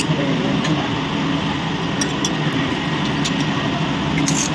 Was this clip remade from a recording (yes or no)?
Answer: no